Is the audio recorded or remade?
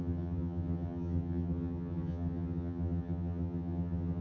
remade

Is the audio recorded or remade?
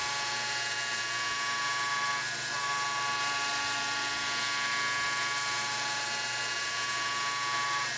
recorded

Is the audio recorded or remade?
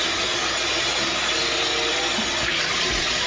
recorded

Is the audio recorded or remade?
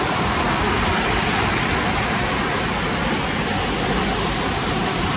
recorded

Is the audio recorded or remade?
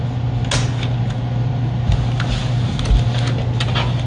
recorded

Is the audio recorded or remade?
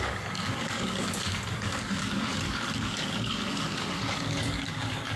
remade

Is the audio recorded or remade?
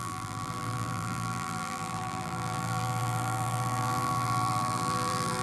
remade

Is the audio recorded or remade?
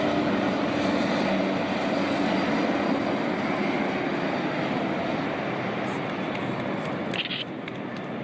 recorded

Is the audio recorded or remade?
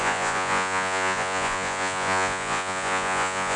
remade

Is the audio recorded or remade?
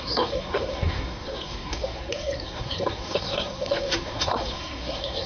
remade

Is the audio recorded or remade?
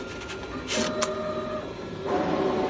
recorded